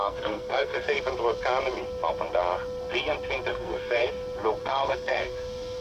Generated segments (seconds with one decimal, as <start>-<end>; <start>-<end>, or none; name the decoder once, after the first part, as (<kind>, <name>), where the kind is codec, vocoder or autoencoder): 0.0-1.0 (codec, SNAC); 3.5-4.1; 4.6-5.8